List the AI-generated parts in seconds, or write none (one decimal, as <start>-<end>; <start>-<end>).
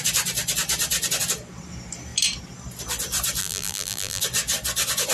3.4-4.2